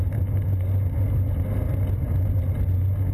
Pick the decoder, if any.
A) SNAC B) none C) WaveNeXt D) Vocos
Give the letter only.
B